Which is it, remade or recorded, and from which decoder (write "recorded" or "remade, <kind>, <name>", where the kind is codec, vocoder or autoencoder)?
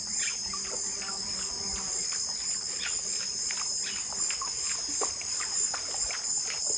recorded